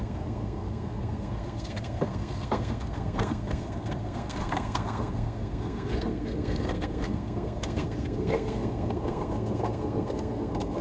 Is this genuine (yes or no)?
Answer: no